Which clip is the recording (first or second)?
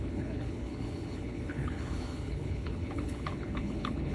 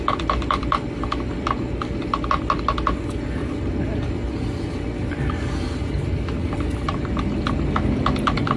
second